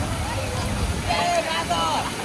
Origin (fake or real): real